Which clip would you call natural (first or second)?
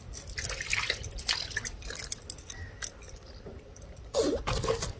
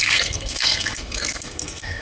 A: first